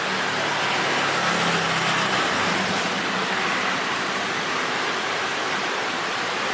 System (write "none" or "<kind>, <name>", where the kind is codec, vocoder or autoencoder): none